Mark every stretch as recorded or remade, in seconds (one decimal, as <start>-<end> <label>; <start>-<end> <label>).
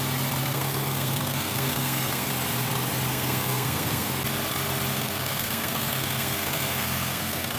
0.0-0.4 recorded; 0.4-2.3 remade; 2.3-3.1 recorded; 3.1-4.1 remade; 4.1-4.9 recorded; 4.9-7.6 remade